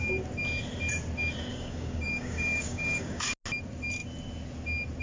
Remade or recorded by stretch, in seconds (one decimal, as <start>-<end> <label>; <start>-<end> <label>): 0.0-1.5 recorded; 1.5-3.3 remade; 3.3-5.0 recorded